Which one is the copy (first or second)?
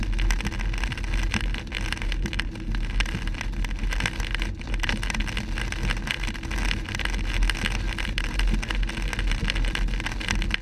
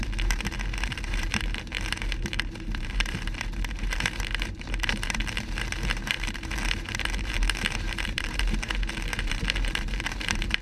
second